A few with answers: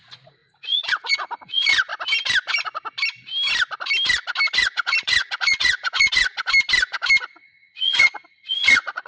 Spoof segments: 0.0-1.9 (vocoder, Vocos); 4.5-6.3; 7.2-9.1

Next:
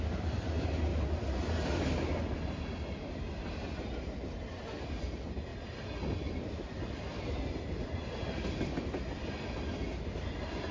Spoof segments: none

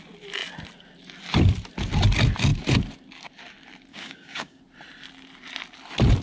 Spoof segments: 3.9-4.6 (codec, DAC)

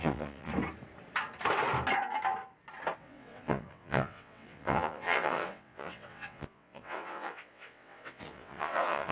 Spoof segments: 0.0-0.5 (vocoder, WaveNeXt); 3.0-9.1

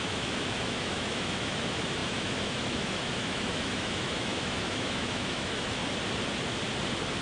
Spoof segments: 0.0-5.8 (autoencoder, DAC-VAE)

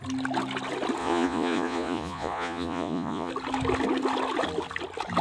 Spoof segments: 1.0-3.3 (vocoder, Vocos)